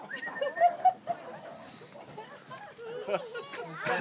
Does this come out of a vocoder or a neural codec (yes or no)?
no